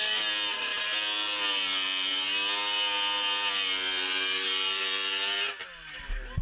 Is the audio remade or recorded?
recorded